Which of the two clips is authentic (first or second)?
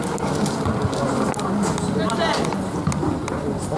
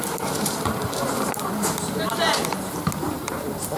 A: first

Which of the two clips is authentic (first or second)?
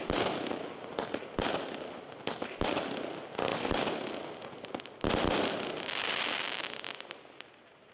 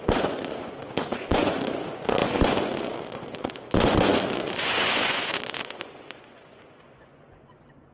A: first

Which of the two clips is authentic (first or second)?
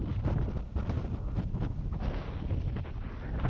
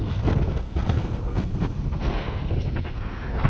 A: first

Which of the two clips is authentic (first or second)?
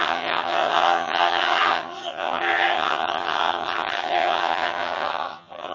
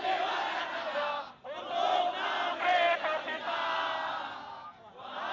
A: second